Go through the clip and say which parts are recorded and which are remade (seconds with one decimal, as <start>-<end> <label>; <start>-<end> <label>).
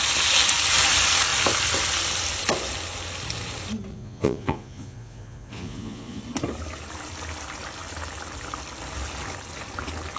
0.0-3.9 recorded; 3.9-6.2 remade; 6.2-10.2 recorded